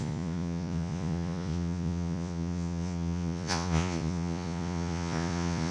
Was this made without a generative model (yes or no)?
no